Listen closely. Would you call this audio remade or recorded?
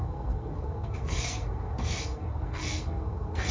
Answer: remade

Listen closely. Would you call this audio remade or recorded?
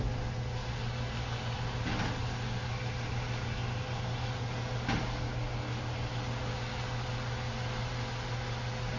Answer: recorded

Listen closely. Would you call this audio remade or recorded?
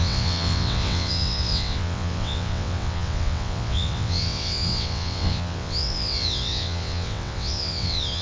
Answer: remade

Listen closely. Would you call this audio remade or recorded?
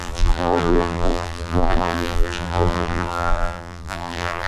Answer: remade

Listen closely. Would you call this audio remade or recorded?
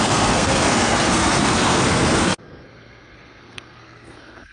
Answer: remade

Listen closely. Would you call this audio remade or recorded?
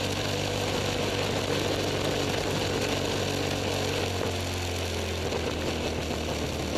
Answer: recorded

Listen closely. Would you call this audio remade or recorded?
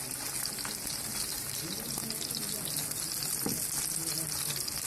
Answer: recorded